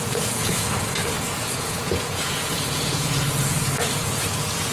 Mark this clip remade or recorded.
remade